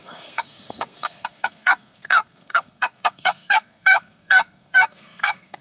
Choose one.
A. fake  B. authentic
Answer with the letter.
A